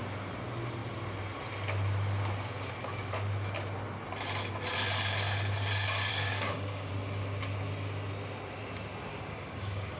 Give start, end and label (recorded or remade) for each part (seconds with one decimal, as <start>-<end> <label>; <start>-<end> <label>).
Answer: 0.0-6.1 recorded; 6.1-6.9 remade; 6.9-9.1 recorded; 9.1-10.0 remade